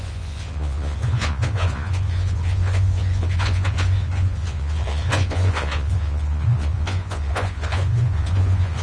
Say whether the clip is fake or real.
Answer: fake